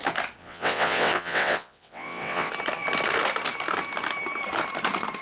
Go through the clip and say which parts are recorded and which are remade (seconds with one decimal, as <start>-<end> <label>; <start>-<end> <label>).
0.0-0.4 recorded; 0.4-2.5 remade; 2.5-5.2 recorded